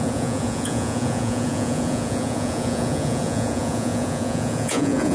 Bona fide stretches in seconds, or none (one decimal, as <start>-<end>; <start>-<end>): none